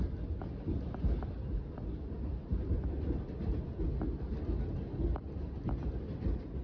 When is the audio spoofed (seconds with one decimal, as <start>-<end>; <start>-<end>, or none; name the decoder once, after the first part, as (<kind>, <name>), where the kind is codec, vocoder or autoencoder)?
none